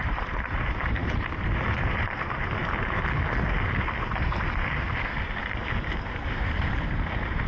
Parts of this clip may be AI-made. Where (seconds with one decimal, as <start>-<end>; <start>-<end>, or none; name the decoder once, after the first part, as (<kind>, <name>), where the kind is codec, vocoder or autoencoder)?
0.0-2.6 (vocoder, BigVGAN v2); 5.4-7.5